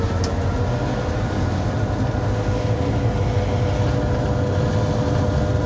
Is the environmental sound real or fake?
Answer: real